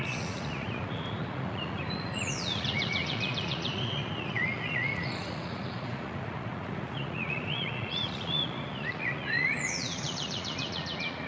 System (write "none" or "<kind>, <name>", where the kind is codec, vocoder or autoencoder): vocoder, Vocos